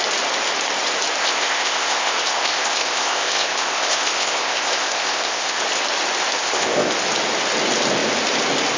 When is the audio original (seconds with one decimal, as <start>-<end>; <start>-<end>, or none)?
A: 0.0-1.2; 5.6-6.4; 6.9-8.8